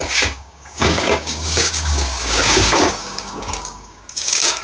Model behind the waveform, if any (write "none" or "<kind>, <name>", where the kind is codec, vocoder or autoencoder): codec, DAC